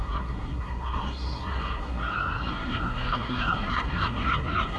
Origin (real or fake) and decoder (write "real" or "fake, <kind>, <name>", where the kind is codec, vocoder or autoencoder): fake, codec, SNAC